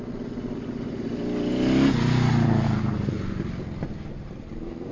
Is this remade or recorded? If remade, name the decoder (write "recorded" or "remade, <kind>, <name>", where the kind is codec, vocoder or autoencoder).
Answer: recorded